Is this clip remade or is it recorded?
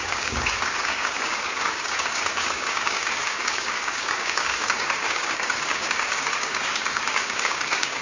remade